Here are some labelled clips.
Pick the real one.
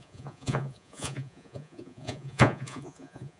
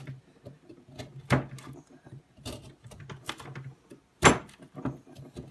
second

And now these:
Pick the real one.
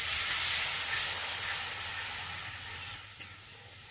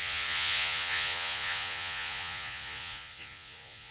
first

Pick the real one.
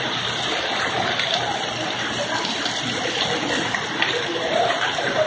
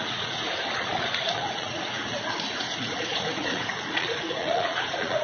first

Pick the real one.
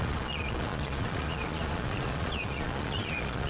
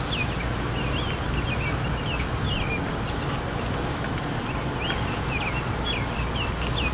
second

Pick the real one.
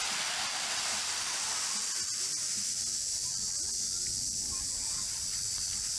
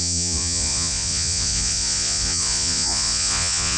first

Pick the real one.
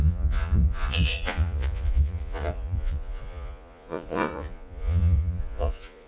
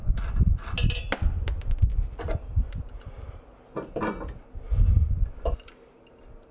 second